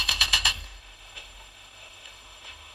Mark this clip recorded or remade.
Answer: remade